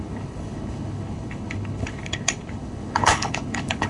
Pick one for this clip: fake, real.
fake